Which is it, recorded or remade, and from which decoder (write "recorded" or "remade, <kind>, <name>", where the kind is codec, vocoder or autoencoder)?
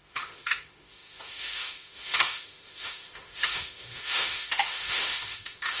remade, autoencoder, DAC-VAE